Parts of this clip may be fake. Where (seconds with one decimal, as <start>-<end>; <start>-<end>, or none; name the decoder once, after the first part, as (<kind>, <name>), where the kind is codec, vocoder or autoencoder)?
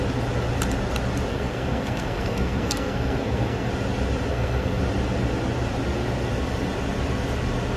1.3-3.7 (codec, SNAC); 4.3-4.8